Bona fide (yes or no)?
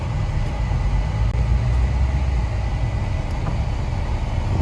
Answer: yes